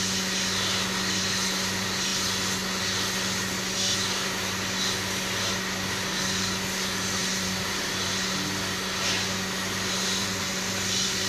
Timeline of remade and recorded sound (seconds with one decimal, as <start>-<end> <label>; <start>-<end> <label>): 0.0-7.2 recorded; 7.2-7.9 remade; 7.9-10.2 recorded; 10.2-10.7 remade; 10.7-11.3 recorded